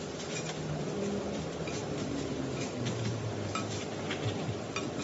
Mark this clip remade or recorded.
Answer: recorded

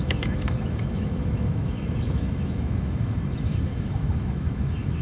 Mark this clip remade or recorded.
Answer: remade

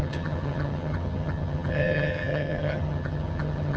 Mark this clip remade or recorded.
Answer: remade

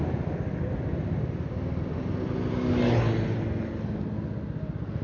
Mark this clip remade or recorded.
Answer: recorded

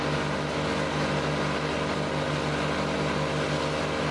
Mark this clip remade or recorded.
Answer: recorded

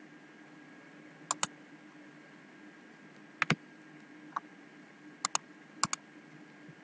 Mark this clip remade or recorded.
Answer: recorded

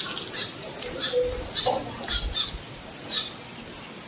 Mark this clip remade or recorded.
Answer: recorded